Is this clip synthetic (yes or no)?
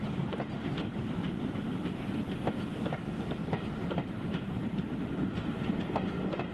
no